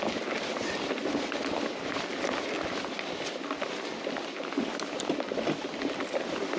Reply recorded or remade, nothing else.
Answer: recorded